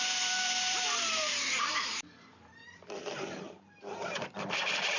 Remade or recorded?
remade